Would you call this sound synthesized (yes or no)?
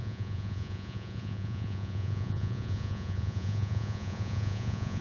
yes